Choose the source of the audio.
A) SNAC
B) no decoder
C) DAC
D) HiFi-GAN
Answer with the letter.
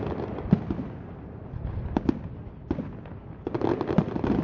B